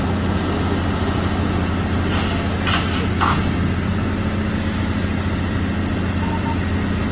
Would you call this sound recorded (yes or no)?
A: yes